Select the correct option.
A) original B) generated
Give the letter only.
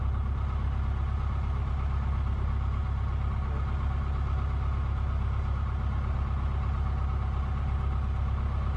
A